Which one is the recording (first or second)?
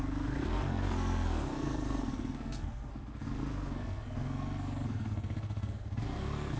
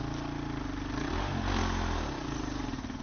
second